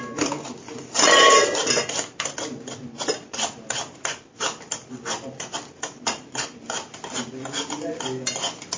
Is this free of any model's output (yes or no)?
yes